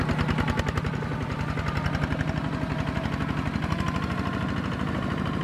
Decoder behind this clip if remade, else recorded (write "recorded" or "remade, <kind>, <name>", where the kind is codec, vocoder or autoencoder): recorded